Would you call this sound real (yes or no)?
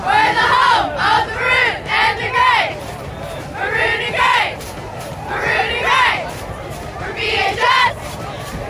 no